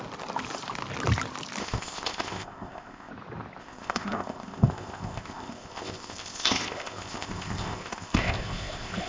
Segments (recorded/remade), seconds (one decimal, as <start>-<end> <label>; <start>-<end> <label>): 0.0-1.6 recorded; 1.6-3.1 remade; 3.1-3.6 recorded; 3.6-9.1 remade